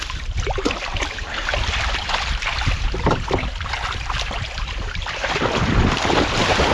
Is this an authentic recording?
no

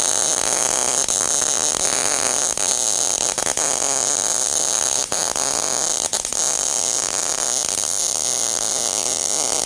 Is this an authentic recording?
yes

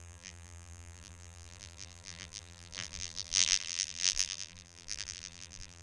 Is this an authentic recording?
no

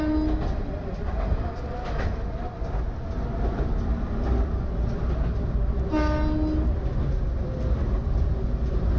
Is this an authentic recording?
yes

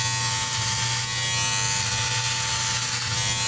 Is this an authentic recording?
yes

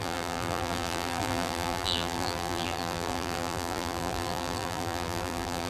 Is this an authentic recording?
no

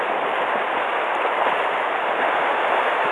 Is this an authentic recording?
yes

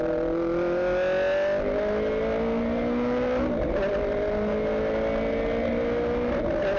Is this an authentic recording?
yes